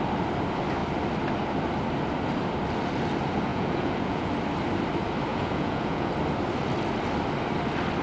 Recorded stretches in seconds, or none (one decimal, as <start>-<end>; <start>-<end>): 0.0-3.5; 4.3-5.3; 6.1-8.0